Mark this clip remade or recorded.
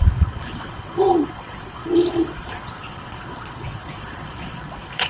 remade